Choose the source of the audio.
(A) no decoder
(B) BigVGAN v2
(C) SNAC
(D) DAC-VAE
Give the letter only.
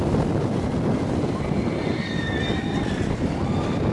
A